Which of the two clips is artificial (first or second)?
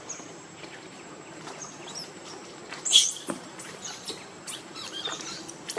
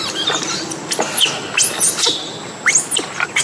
first